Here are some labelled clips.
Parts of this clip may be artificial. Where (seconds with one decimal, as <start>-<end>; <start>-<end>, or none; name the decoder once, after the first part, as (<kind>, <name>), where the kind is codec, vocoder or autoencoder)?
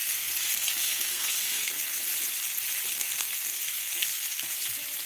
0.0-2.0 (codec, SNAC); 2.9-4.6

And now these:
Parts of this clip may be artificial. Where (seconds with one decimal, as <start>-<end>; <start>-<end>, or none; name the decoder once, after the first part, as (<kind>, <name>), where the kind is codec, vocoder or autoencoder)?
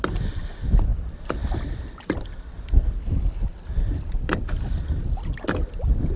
none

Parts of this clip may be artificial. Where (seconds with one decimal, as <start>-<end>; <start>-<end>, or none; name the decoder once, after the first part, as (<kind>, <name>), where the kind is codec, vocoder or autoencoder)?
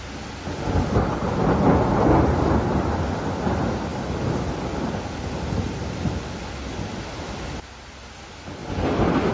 none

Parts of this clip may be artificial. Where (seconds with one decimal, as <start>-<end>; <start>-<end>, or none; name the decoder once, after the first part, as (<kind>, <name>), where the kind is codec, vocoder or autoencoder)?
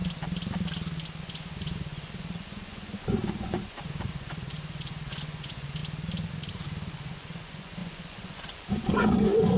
1.2-5.8 (vocoder, Vocos); 6.5-9.6